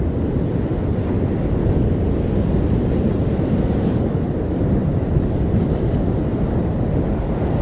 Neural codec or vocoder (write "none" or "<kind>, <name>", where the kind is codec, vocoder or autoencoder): none